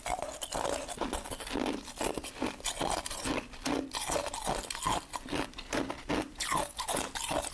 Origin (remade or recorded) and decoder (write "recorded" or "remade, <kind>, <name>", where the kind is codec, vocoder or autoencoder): recorded